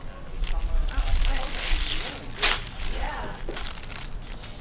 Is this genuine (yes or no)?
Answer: yes